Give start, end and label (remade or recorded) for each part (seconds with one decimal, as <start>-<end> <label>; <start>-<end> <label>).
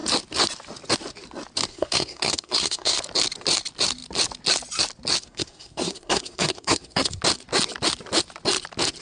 0.0-1.7 recorded; 1.7-3.0 remade; 3.0-5.2 recorded; 5.2-7.2 remade; 7.2-9.0 recorded